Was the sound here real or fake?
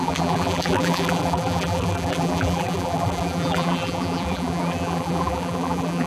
fake